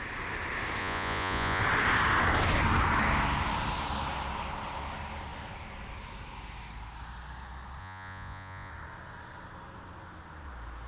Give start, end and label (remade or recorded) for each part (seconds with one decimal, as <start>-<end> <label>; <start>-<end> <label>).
0.0-0.8 recorded; 0.8-1.6 remade; 1.6-7.8 recorded; 7.8-8.7 remade; 8.7-10.9 recorded